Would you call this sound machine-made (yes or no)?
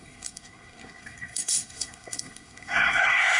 yes